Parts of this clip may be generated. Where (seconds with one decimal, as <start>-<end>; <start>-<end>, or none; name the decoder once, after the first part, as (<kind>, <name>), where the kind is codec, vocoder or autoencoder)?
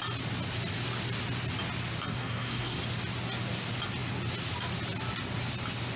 2.1-2.8 (codec, SNAC)